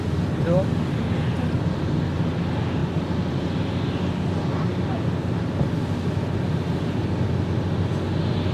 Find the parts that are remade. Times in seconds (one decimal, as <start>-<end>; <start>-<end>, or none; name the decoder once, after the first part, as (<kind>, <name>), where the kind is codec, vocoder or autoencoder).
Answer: none